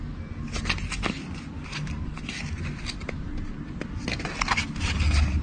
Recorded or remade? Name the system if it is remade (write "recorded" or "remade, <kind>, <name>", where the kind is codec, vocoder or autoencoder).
recorded